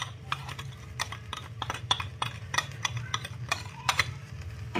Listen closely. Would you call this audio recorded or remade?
remade